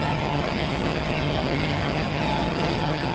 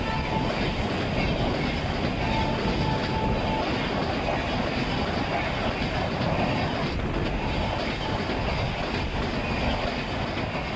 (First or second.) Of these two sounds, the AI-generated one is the first